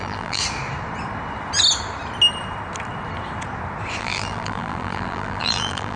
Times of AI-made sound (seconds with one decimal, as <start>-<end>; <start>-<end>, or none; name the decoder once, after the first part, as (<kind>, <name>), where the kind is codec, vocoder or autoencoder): 0.0-0.4 (vocoder, BigVGAN v2); 4.0-6.0